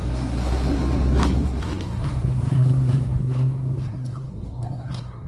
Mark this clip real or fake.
fake